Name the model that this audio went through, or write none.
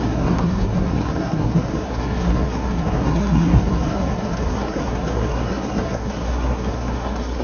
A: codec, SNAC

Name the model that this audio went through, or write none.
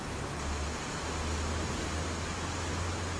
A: none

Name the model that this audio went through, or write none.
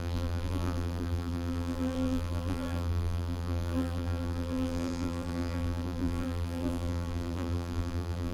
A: vocoder, BigVGAN v2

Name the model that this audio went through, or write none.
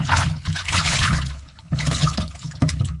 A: codec, HILCodec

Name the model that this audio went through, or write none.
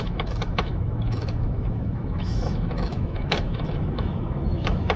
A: autoencoder, DAC-VAE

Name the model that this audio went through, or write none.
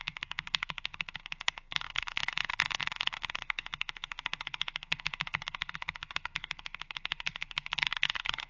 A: codec, SNAC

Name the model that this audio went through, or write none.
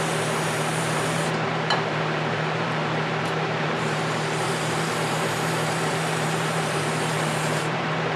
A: vocoder, BigVGAN v2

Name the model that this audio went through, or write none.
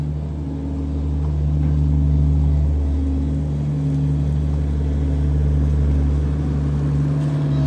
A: none